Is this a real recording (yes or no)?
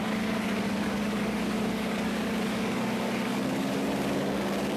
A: no